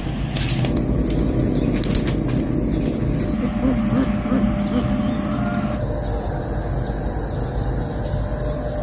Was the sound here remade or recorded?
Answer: recorded